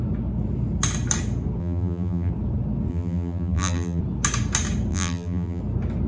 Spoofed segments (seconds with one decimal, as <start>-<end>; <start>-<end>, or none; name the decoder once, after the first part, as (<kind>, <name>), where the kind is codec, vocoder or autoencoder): 1.6-2.3 (vocoder, BigVGAN v2); 2.9-4.0; 4.9-5.6